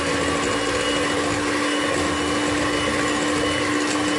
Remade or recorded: recorded